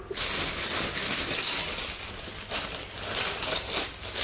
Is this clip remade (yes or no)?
no